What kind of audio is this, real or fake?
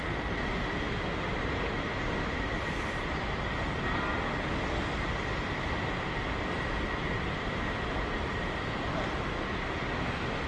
real